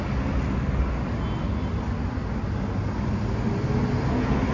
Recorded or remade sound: recorded